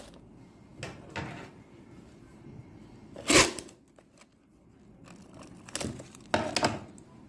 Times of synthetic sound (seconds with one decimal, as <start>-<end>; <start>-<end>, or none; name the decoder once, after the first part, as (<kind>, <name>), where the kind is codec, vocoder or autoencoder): none